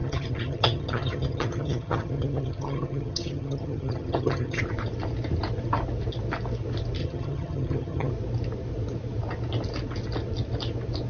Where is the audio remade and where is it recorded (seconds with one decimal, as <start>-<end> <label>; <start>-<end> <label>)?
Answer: 0.0-4.6 remade; 4.6-7.0 recorded; 7.0-8.1 remade; 8.1-11.1 recorded